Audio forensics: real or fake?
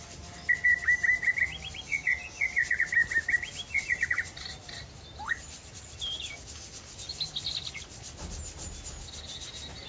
real